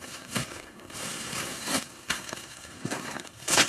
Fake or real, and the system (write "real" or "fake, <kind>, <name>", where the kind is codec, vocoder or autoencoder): fake, codec, SNAC